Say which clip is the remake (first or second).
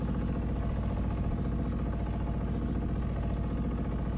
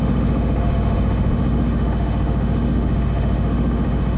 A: second